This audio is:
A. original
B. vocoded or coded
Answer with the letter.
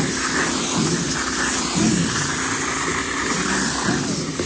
A